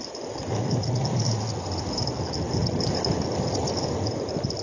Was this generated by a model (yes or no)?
no